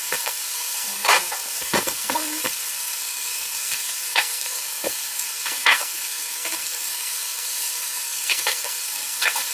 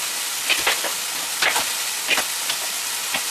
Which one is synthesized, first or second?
first